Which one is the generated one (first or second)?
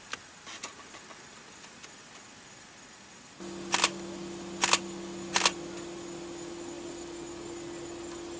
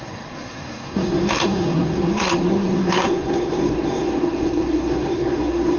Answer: second